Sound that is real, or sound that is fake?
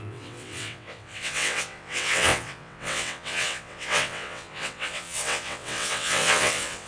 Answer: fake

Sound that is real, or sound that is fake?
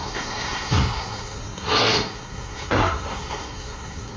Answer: fake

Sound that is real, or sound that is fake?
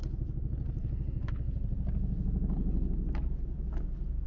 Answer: real